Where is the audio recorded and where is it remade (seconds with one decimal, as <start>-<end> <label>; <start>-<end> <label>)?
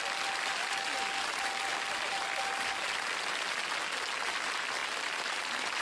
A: 0.0-4.8 recorded; 4.8-5.8 remade